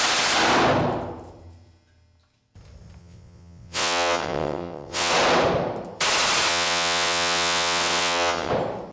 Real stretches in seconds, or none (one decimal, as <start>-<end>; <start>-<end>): 0.0-3.0; 5.1-6.5; 8.5-8.9